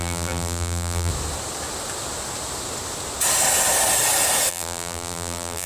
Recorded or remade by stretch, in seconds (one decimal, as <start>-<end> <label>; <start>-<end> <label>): 0.0-1.1 remade; 1.1-4.5 recorded; 4.5-5.7 remade